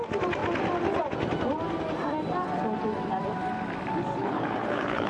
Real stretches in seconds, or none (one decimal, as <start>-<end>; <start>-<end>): 0.0-4.2